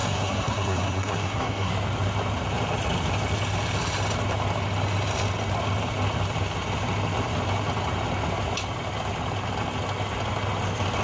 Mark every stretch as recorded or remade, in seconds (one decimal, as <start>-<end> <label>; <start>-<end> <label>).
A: 0.0-1.7 remade; 1.7-11.0 recorded